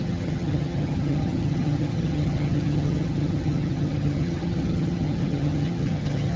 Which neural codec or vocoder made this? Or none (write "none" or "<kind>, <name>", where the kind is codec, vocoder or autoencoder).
vocoder, HiFi-GAN